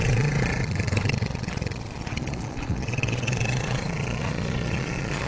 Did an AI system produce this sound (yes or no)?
yes